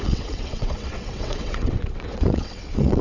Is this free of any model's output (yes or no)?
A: no